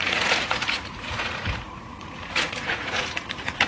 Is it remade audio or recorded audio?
remade